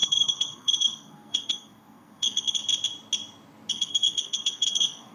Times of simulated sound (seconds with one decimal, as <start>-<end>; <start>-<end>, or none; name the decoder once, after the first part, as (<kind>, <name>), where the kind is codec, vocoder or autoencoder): 0.0-2.6 (codec, SNAC); 3.7-5.1